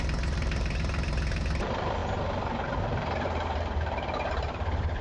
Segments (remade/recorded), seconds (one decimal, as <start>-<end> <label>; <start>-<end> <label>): 0.0-5.0 remade